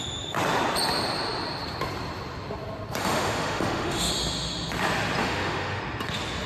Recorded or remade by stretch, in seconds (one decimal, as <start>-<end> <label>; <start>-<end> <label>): 0.0-3.0 recorded; 3.0-4.1 remade; 4.1-5.2 recorded; 5.2-5.8 remade; 5.8-6.5 recorded